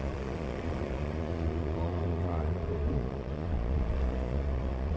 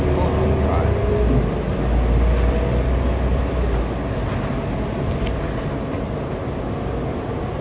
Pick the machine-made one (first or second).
first